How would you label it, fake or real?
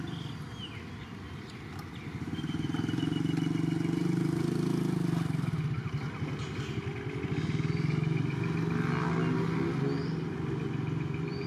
real